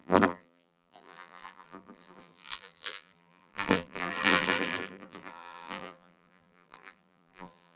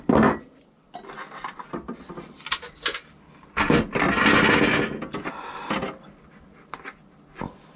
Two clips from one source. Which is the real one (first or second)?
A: second